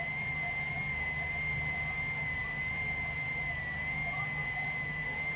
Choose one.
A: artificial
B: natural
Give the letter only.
B